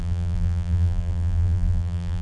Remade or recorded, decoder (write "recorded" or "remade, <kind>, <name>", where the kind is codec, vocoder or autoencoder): remade, vocoder, BigVGAN v2